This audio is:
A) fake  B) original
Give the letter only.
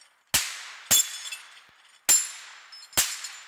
B